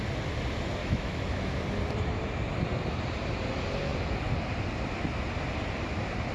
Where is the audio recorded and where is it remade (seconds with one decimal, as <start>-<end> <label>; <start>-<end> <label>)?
0.0-0.8 recorded; 0.8-1.6 remade; 1.6-6.3 recorded